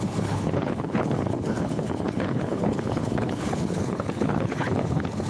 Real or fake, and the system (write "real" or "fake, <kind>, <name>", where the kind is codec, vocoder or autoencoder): fake, codec, HILCodec